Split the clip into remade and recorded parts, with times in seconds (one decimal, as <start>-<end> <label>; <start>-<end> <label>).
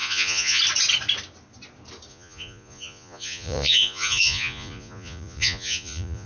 0.0-0.6 remade; 0.6-2.1 recorded; 2.1-6.3 remade